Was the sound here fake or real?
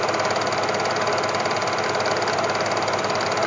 real